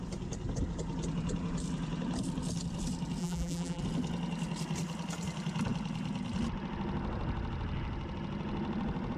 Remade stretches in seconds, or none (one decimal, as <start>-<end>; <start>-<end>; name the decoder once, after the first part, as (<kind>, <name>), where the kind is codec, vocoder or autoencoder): 3.2-3.8 (vocoder, BigVGAN v2)